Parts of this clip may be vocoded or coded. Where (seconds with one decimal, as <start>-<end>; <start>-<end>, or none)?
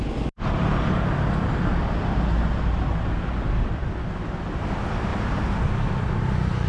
5.1-6.7